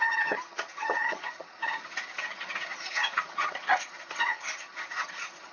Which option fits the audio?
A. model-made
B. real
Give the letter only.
A